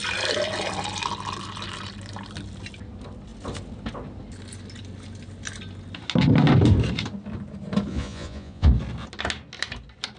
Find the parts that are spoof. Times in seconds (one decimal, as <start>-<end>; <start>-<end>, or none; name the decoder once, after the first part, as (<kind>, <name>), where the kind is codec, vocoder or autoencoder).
7.9-8.7 (vocoder, Vocos)

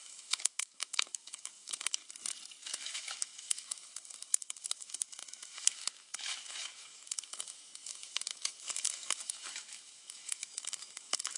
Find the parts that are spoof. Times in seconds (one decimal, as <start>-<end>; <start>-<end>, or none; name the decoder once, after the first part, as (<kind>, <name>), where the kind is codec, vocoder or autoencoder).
0.0-2.0 (autoencoder, DAC-VAE); 2.6-11.4

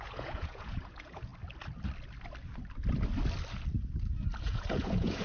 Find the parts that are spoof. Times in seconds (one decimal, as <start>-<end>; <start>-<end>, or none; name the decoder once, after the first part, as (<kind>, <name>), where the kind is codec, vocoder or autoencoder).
0.0-1.3 (vocoder, Vocos); 4.4-5.2

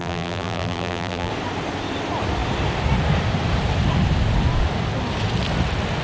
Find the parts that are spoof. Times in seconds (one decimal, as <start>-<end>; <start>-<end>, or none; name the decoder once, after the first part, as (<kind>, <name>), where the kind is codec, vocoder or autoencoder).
0.0-1.3 (vocoder, BigVGAN v2)

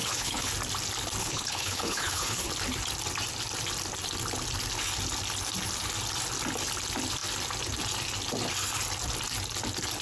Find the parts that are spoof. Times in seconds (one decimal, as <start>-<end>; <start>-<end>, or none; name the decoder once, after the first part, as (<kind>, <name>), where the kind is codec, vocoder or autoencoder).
0.0-0.5 (codec, HILCodec); 1.2-2.5